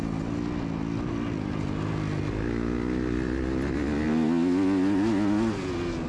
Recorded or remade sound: recorded